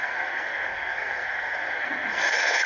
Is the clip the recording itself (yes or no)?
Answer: no